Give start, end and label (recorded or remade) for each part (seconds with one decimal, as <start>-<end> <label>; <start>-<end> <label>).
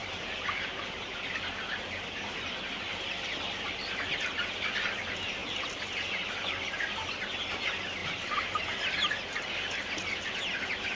0.0-1.1 remade; 1.1-8.0 recorded; 8.0-8.6 remade; 8.6-10.9 recorded